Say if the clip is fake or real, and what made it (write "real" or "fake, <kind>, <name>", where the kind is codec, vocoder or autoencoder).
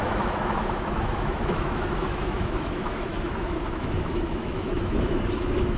fake, autoencoder, DAC-VAE